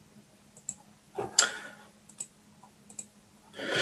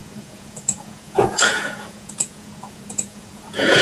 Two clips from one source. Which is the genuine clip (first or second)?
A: first